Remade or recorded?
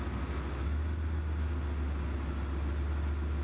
recorded